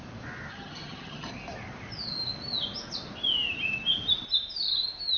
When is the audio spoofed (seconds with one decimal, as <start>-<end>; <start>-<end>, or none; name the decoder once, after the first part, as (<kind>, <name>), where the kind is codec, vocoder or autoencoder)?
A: 0.5-1.3 (vocoder, HiFi-GAN)